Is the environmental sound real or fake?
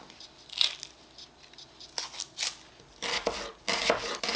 real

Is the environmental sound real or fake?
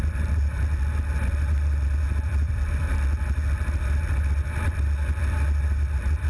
real